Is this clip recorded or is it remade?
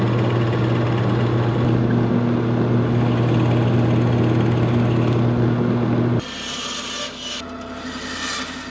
recorded